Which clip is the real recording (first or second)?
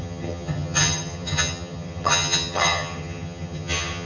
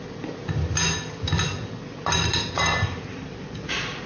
second